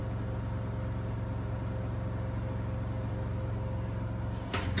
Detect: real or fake real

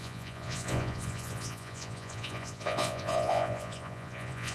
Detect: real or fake fake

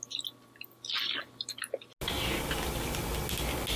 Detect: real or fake real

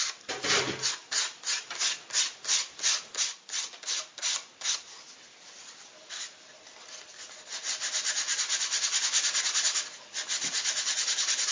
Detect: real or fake real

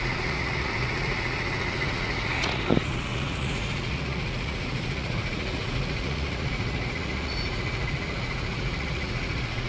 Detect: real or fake fake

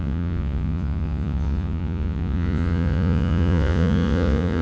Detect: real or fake fake